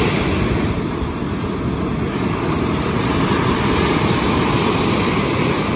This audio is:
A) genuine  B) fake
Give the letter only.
A